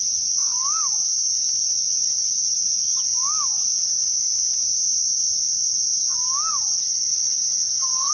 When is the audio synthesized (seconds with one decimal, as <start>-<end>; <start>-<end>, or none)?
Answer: 0.0-0.5; 1.7-3.1; 6.8-8.1